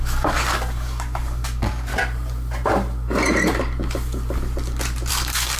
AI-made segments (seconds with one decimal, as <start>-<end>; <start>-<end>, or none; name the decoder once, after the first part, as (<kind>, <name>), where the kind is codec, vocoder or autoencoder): 0.0-1.9 (codec, DAC); 5.1-5.6